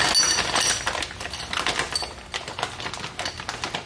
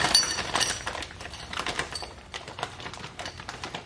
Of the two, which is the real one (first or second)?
first